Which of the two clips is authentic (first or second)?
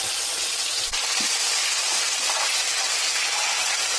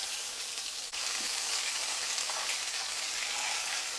first